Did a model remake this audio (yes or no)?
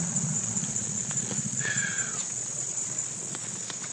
yes